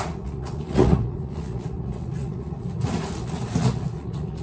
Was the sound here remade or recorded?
remade